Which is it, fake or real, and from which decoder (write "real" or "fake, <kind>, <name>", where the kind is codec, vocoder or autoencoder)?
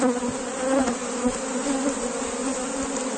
real